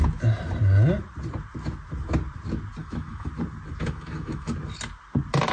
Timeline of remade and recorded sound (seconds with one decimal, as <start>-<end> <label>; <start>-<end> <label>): 0.0-2.8 recorded; 2.8-3.3 remade; 3.3-3.8 recorded; 3.8-4.5 remade; 4.5-5.5 recorded